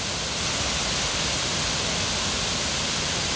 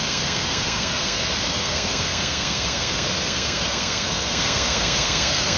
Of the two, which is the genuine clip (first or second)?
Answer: first